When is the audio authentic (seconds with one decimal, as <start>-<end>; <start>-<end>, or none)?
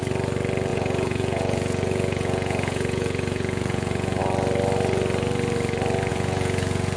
0.0-0.7; 4.2-6.1